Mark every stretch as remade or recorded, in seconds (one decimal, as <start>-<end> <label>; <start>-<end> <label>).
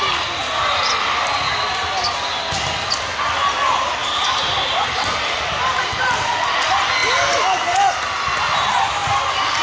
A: 0.0-4.0 recorded; 4.0-5.8 remade; 5.8-9.6 recorded